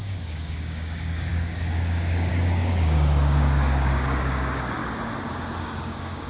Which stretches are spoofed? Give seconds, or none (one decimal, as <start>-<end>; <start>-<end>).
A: 0.0-4.8; 5.6-6.3